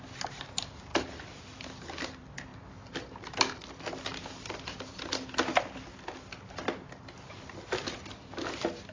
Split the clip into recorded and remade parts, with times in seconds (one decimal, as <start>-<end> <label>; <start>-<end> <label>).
0.0-8.9 recorded